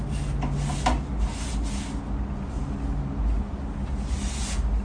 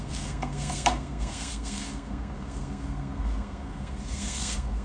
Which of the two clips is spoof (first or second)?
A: second